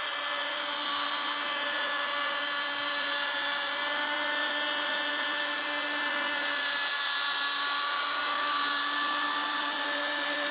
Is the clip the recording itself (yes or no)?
yes